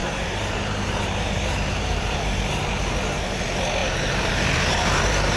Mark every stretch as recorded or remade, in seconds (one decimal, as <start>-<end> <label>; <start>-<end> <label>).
0.0-2.4 remade; 2.4-3.8 recorded; 3.8-5.4 remade